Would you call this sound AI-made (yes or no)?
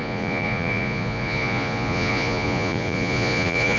yes